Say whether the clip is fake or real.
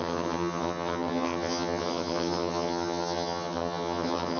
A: fake